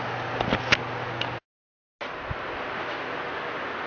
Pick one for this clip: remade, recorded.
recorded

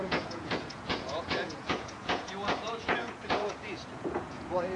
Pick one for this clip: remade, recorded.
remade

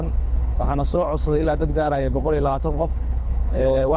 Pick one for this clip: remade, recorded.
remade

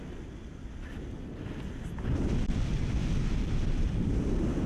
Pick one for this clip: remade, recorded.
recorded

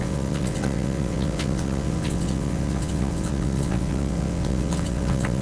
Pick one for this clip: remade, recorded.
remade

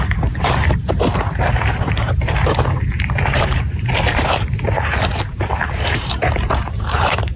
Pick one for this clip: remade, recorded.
remade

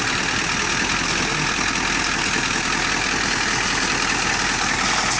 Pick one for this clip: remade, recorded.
recorded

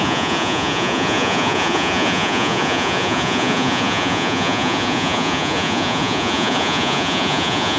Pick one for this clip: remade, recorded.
remade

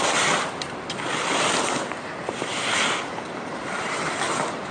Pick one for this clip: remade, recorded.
recorded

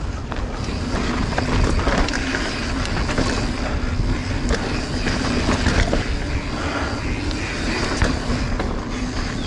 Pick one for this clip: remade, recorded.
recorded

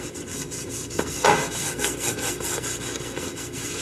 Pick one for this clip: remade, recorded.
remade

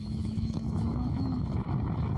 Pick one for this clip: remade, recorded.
remade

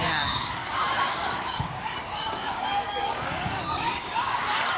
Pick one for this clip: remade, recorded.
remade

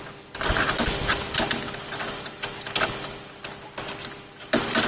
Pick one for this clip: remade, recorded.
recorded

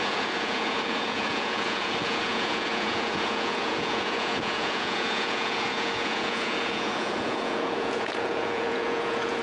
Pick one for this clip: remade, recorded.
remade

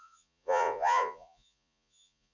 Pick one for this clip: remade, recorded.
remade